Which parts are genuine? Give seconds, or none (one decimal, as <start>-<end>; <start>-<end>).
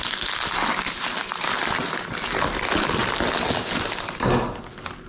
0.0-5.1